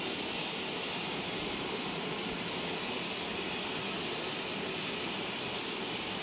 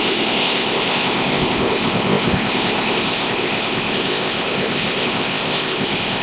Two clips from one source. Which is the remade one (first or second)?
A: second